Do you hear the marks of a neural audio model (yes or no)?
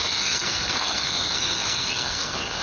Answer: yes